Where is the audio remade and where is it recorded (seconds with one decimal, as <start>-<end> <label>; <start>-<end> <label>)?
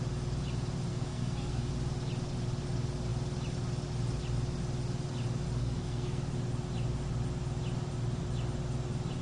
0.0-0.9 recorded; 0.9-1.7 remade; 1.7-5.6 recorded; 5.6-6.2 remade; 6.2-9.2 recorded